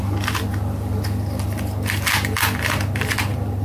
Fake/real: real